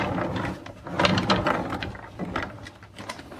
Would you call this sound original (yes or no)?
no